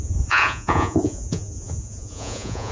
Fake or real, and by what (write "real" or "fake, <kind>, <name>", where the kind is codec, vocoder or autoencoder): fake, vocoder, Vocos